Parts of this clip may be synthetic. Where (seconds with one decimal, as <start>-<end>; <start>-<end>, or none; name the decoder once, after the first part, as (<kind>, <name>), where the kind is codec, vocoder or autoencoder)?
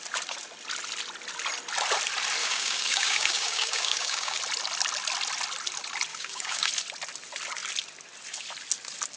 2.4-4.4 (codec, DAC); 6.1-6.7